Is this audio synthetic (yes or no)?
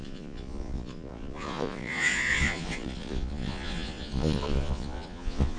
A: yes